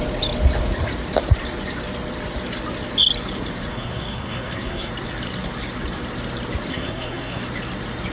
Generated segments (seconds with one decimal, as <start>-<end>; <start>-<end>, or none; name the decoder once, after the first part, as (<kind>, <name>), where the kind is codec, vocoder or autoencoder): 3.7-4.9 (codec, SNAC); 6.7-7.4